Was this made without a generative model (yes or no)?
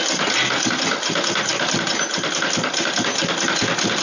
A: yes